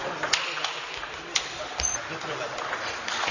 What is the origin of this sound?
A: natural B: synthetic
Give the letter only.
A